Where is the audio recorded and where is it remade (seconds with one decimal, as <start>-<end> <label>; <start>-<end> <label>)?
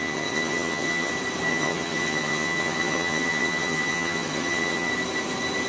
0.0-1.1 remade; 1.1-1.5 recorded; 1.5-4.9 remade; 4.9-5.7 recorded